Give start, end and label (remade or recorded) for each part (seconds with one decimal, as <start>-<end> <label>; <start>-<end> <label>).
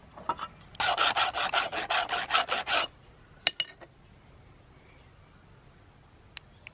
0.0-6.7 recorded